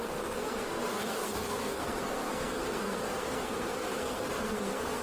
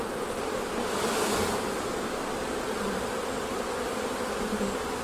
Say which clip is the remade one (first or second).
first